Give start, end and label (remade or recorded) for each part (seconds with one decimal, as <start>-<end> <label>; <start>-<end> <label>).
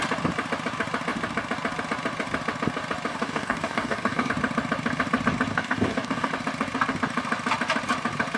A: 0.0-3.1 recorded; 3.1-4.3 remade; 4.3-5.5 recorded; 5.5-6.3 remade; 6.3-8.4 recorded